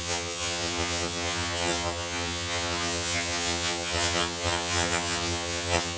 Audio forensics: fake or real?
fake